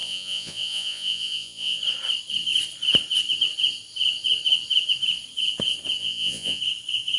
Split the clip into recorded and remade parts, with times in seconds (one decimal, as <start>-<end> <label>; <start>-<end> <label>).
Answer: 0.0-1.8 remade; 1.8-6.0 recorded; 6.0-6.6 remade; 6.6-7.2 recorded